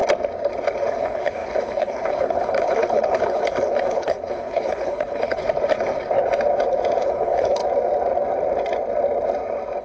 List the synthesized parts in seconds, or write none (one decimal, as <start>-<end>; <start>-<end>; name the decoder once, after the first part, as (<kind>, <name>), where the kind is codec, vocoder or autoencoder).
0.9-5.4 (codec, HILCodec); 7.0-7.6

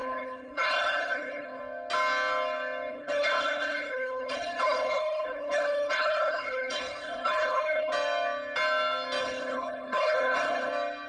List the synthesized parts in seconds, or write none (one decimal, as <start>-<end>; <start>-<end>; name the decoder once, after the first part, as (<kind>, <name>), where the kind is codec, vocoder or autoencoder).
0.0-1.6 (codec, HILCodec); 2.9-7.9; 9.2-10.7